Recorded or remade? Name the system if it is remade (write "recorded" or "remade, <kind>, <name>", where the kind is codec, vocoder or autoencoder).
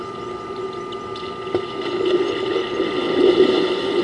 recorded